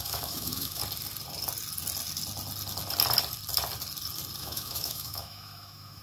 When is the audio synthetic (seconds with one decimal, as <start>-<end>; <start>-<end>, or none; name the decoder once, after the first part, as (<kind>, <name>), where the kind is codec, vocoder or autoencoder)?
0.0-0.8 (autoencoder, DAC-VAE); 4.4-6.0